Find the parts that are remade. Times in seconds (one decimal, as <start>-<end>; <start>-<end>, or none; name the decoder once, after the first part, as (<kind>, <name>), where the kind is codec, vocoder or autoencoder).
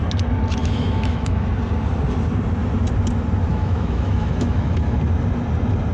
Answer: 0.6-1.5 (autoencoder, DAC-VAE); 3.5-5.0